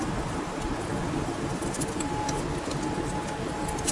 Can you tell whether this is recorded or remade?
recorded